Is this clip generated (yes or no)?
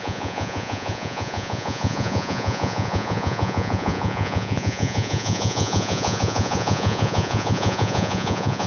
yes